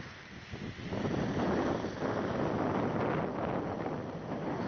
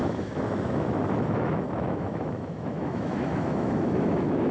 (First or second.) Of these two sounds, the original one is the first